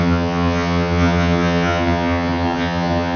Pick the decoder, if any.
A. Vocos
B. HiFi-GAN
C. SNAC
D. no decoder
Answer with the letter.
B